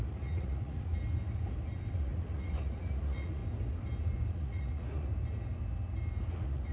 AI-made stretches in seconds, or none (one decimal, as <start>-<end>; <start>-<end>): 0.0-0.9; 1.9-3.4; 4.3-5.1; 6.3-6.7